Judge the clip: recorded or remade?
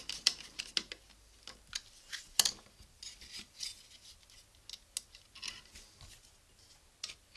recorded